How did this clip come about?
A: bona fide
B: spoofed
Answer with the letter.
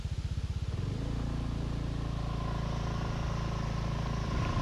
A